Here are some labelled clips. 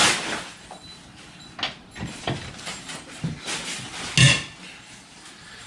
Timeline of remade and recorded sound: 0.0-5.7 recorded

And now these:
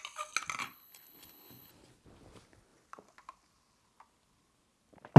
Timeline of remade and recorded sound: 0.0-0.6 recorded; 0.6-1.7 remade; 1.7-5.2 recorded